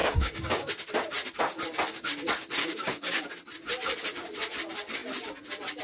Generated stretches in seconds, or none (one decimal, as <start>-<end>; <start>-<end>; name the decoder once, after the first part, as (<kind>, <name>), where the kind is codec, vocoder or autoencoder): 0.0-0.7 (codec, DAC); 2.6-3.2